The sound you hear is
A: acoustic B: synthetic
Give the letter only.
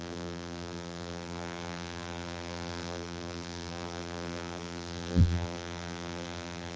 B